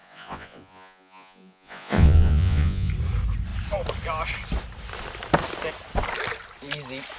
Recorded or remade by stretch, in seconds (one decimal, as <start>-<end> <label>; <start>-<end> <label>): 0.0-2.9 remade; 2.9-7.2 recorded